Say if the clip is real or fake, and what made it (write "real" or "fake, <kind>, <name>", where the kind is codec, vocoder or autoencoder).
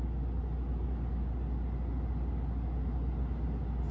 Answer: real